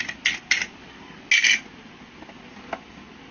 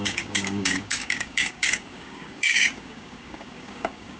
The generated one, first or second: second